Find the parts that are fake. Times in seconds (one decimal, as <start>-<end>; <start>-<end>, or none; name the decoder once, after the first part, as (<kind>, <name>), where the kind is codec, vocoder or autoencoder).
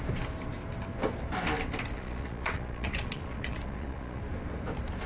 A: 1.9-4.2 (vocoder, Vocos)